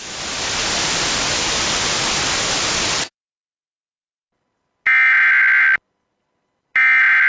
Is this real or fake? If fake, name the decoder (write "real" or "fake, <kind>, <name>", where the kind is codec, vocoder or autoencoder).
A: real